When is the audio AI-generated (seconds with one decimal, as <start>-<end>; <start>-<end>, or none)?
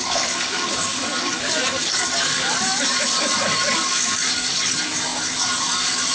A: 0.0-6.1